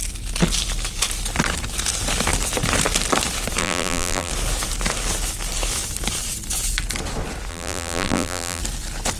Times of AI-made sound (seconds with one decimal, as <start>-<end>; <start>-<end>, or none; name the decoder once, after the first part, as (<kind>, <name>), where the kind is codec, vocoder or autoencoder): 3.6-4.3 (vocoder, BigVGAN v2); 7.5-8.6